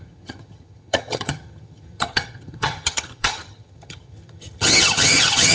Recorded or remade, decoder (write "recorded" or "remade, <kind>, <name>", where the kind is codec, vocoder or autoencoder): remade, vocoder, HiFi-GAN